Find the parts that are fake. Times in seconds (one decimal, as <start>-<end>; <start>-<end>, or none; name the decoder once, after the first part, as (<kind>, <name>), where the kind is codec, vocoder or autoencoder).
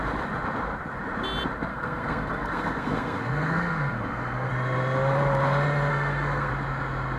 1.7-4.5 (codec, SNAC); 5.9-6.5